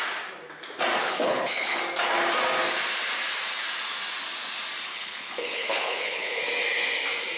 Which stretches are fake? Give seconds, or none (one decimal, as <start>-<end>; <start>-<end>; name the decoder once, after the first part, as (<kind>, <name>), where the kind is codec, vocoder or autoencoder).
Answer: 1.0-1.8 (codec, HILCodec); 4.9-6.4